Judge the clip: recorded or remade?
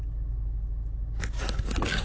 recorded